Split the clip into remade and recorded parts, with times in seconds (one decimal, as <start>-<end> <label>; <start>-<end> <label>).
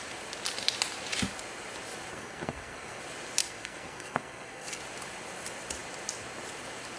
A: 0.0-2.1 recorded; 2.1-3.0 remade; 3.0-3.4 recorded; 3.4-4.8 remade; 4.8-7.0 recorded